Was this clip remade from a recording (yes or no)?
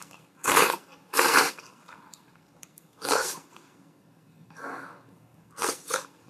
yes